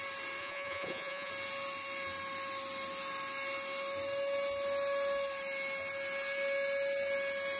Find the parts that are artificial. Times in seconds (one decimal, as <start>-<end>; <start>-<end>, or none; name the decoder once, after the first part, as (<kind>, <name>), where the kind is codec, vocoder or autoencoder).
0.4-1.3 (vocoder, Vocos)